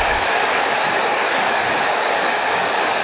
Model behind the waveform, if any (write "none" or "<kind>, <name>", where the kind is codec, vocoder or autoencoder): codec, DAC